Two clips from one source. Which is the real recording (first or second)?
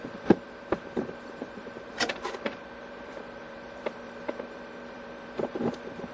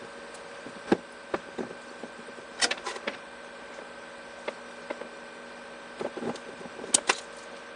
second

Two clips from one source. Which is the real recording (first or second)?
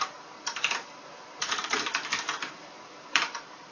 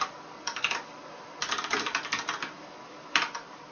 second